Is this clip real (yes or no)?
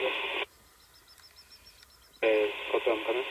yes